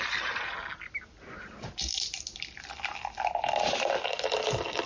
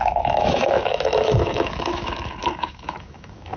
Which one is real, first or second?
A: first